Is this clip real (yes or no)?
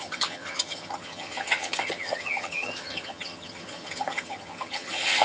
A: no